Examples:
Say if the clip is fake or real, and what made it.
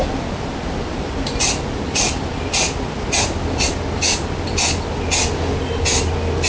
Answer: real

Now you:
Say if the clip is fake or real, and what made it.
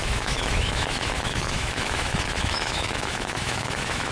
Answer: fake, autoencoder, DAC-VAE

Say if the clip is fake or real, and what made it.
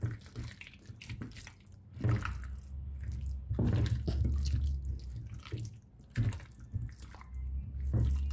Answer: real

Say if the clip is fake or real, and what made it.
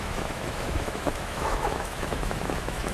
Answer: fake, autoencoder, DAC-VAE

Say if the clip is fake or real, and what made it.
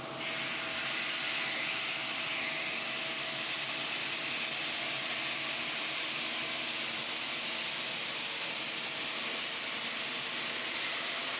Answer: real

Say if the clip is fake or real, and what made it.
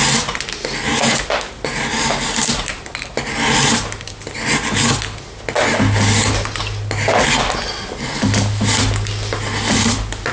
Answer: real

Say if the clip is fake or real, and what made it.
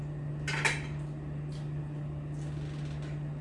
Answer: real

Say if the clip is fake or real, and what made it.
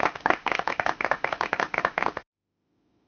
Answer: fake, autoencoder, DAC-VAE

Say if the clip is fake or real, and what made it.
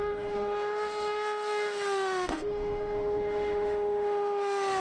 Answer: fake, autoencoder, DAC-VAE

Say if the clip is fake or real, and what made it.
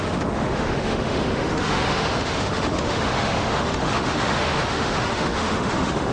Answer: fake, autoencoder, DAC-VAE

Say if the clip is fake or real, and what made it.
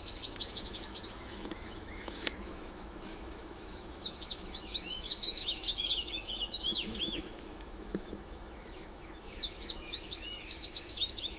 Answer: fake, autoencoder, DAC-VAE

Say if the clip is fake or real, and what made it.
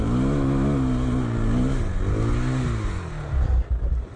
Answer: real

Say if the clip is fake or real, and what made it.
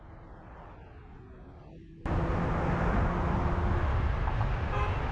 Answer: real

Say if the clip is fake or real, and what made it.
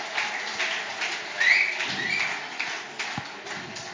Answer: real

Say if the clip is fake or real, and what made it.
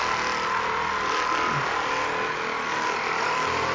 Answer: real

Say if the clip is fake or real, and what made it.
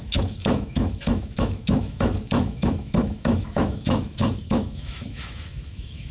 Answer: fake, autoencoder, DAC-VAE